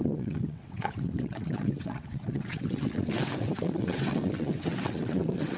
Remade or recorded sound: remade